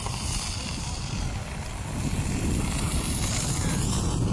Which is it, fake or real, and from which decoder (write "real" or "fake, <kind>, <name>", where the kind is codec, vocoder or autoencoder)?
real